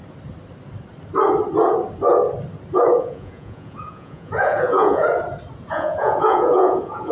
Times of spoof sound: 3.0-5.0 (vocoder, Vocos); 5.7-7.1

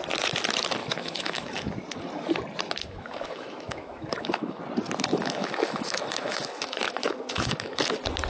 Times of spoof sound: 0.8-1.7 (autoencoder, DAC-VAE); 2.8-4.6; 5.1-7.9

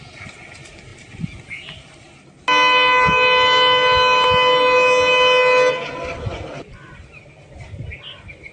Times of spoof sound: none